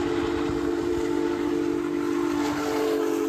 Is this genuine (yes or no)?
yes